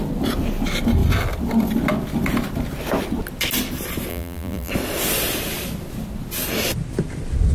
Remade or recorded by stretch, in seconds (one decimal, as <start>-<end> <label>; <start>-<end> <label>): 0.0-4.1 recorded; 4.1-4.7 remade; 4.7-7.5 recorded